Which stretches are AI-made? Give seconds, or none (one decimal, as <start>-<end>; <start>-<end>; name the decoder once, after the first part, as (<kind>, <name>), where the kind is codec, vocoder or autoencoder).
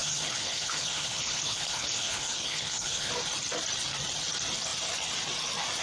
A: 0.0-3.1 (codec, HILCodec)